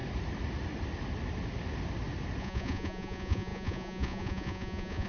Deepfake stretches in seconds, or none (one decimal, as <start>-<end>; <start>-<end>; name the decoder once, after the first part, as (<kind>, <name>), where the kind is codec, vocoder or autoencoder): 2.4-5.1 (vocoder, Vocos)